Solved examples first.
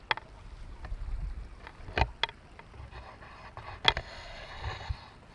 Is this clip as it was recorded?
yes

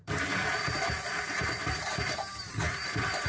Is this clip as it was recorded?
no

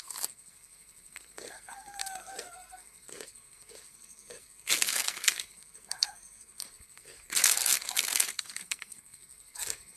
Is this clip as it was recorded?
no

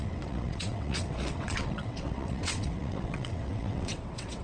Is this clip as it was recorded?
no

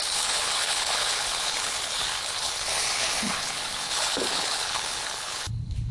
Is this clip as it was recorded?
no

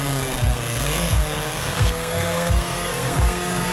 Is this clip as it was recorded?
no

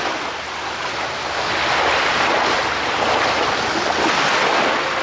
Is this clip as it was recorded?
yes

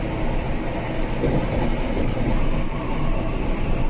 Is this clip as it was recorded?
yes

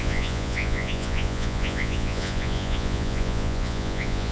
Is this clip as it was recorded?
no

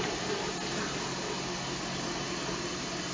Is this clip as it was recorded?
yes